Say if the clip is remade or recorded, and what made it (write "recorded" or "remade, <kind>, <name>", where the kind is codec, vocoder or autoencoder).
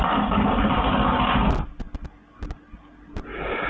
recorded